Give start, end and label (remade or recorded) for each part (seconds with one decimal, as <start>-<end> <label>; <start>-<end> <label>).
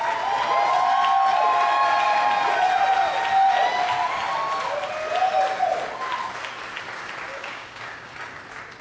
0.0-7.3 recorded; 7.3-8.4 remade; 8.4-8.8 recorded